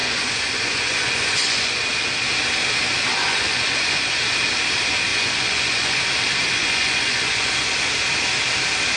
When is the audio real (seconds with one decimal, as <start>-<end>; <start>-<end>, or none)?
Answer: 1.8-3.2; 4.2-5.1; 6.0-6.6; 7.7-9.0